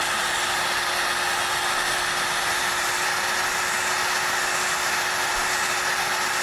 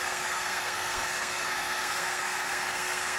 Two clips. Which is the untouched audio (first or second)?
first